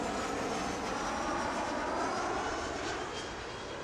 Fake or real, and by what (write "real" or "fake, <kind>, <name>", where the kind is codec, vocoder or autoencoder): real